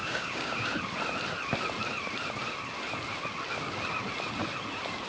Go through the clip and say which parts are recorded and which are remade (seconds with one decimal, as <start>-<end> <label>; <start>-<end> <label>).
0.0-0.7 remade; 0.7-5.1 recorded